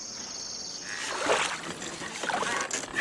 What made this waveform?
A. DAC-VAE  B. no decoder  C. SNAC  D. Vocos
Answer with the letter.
B